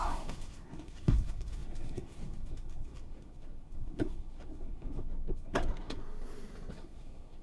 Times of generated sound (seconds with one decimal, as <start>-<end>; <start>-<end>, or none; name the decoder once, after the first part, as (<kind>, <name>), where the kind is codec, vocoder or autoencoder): 0.0-6.0 (codec, SNAC); 6.7-7.4